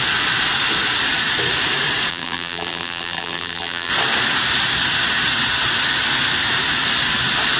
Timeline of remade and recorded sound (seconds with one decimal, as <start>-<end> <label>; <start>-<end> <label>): 0.0-2.1 recorded; 2.1-3.9 remade; 3.9-7.6 recorded